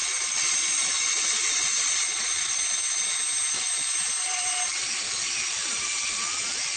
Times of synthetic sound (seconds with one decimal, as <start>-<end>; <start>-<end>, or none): 0.0-2.6